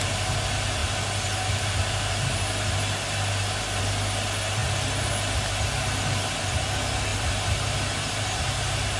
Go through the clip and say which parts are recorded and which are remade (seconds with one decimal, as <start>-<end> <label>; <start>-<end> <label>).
0.0-9.0 recorded